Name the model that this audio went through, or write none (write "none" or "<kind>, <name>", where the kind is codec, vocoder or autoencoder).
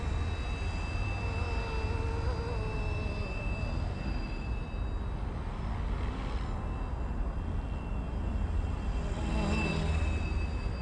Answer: none